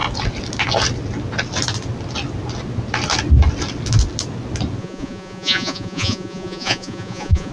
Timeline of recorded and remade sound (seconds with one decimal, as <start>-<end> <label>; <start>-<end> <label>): 0.0-4.8 recorded; 4.8-7.5 remade